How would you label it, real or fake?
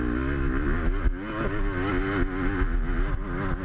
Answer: real